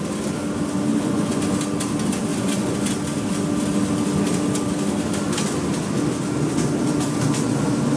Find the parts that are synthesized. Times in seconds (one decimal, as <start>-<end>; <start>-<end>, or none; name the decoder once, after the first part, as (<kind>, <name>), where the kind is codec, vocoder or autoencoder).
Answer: 0.9-1.4 (vocoder, Vocos); 2.3-2.9

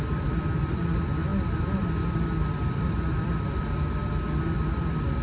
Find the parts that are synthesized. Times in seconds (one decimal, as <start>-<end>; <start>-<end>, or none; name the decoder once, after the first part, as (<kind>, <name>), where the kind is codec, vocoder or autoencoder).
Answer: none

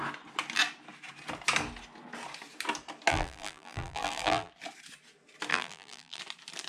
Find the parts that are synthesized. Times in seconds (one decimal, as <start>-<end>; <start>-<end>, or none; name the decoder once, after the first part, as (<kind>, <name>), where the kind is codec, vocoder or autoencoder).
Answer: 3.1-4.5 (vocoder, BigVGAN v2); 5.5-6.2

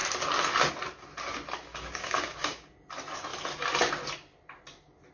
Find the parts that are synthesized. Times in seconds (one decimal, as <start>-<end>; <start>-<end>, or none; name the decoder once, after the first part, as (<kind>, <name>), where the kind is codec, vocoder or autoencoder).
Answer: 1.7-2.7 (codec, DAC)